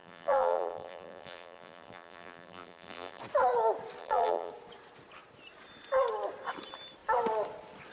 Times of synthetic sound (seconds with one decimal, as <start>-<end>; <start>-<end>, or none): 0.0-3.2; 4.0-4.5